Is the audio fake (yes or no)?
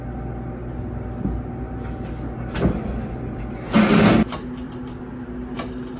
no